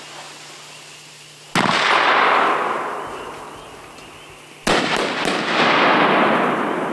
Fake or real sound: real